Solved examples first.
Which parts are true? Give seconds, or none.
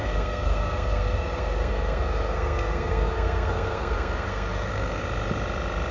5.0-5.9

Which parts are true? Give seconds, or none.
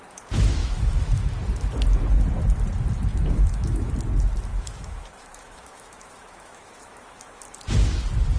0.0-0.6; 1.3-3.1; 3.9-4.5; 7.4-8.4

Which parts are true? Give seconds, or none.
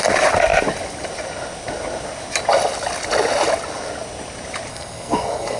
0.0-4.7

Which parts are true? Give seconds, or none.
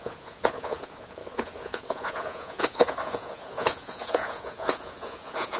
none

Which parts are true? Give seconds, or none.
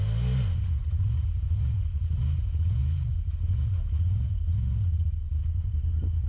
0.0-0.8; 2.2-5.4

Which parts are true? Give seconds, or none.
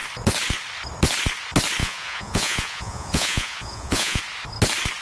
0.0-1.8; 4.2-5.0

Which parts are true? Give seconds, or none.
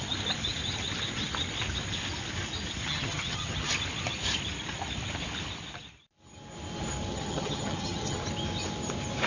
0.0-2.8; 3.7-7.1; 8.2-9.3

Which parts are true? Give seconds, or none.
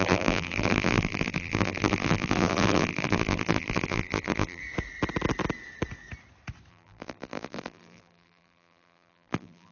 4.6-6.7